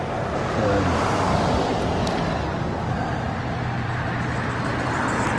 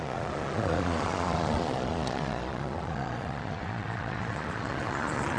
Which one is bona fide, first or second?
first